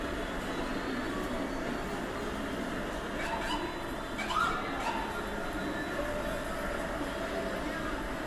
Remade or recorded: recorded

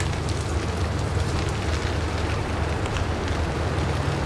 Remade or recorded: recorded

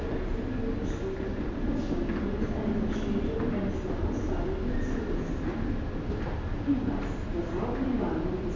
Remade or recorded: recorded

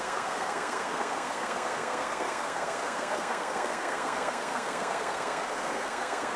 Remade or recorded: remade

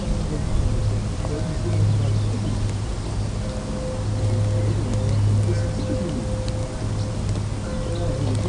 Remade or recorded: recorded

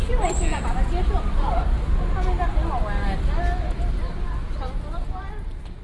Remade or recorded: recorded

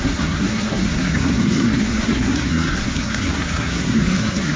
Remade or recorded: remade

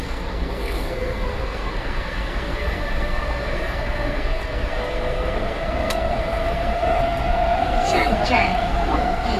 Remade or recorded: remade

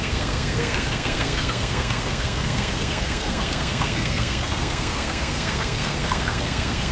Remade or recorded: remade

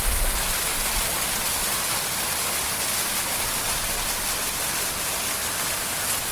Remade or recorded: recorded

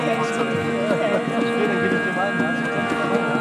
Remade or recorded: recorded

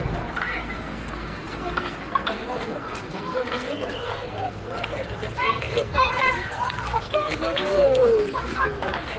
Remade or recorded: remade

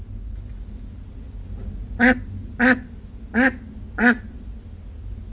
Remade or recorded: recorded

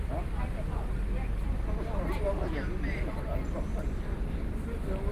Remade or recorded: recorded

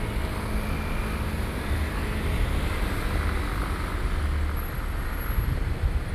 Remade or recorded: recorded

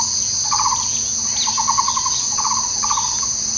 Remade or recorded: recorded